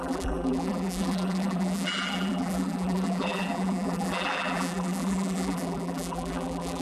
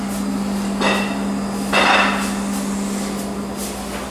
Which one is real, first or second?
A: second